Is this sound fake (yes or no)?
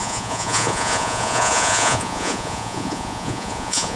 yes